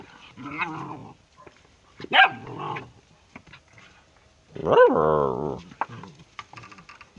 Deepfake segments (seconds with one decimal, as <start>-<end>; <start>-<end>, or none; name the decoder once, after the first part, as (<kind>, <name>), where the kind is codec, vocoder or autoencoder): 1.0-2.8 (vocoder, BigVGAN v2); 4.6-5.7